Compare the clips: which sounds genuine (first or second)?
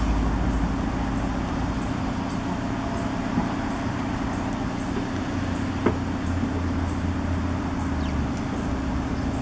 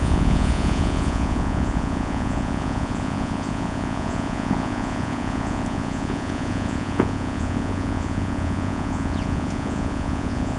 first